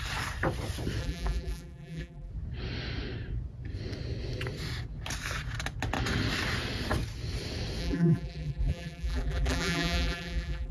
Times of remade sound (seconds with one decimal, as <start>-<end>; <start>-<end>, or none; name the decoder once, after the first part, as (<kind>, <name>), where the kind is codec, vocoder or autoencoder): 1.0-2.3 (vocoder, BigVGAN v2); 7.8-10.7